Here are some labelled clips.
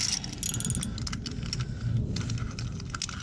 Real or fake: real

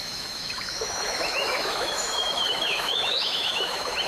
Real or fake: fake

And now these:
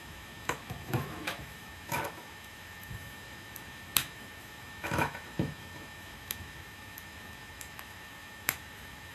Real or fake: fake